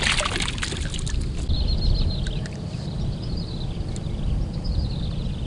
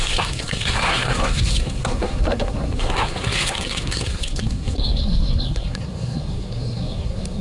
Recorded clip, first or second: first